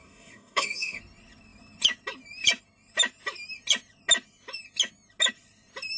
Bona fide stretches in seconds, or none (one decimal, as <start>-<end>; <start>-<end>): 1.0-6.0